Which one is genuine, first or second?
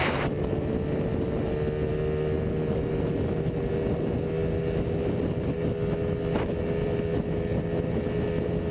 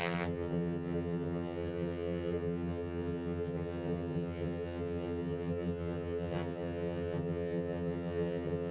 first